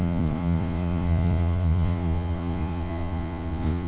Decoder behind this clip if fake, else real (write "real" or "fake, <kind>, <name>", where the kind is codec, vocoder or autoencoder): fake, vocoder, Vocos